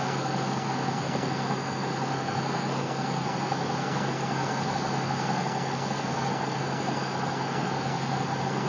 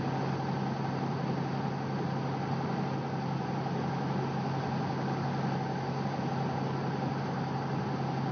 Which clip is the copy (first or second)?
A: first